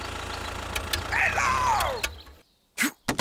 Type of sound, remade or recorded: recorded